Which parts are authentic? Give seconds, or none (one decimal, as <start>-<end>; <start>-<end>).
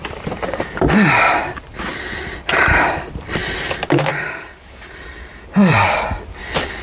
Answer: 0.0-6.8